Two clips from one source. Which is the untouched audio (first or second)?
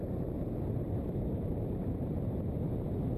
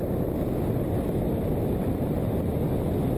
second